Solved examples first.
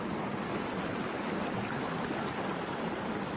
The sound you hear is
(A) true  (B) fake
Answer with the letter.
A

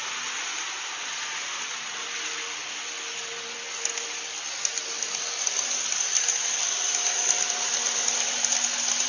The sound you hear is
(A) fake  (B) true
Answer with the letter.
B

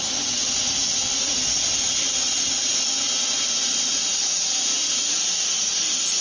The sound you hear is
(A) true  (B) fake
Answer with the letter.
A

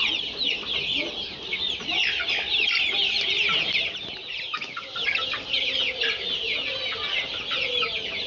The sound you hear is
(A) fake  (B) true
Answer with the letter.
B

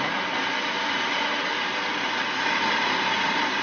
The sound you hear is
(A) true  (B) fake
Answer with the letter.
A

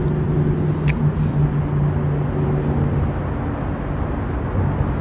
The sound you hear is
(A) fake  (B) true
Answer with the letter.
B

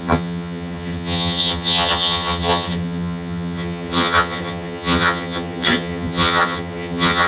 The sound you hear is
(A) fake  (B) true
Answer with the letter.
A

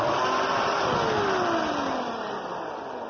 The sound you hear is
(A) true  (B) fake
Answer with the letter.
A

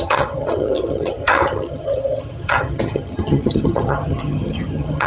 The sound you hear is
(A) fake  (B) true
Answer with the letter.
A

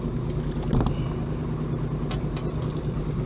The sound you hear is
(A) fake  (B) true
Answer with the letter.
B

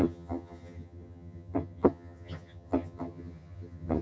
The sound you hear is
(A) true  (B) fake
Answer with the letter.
B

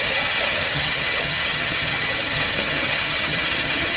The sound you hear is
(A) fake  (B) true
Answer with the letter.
A